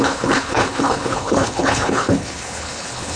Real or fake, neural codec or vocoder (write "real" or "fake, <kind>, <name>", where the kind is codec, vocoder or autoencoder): fake, codec, HILCodec